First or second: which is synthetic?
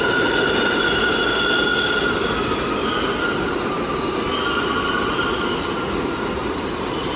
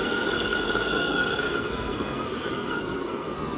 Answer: second